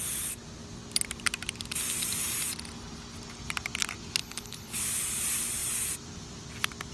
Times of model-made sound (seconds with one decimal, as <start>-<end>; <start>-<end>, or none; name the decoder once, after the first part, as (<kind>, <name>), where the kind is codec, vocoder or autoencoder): 4.2-4.8 (codec, HILCodec)